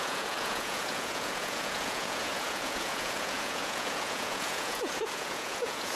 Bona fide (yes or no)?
no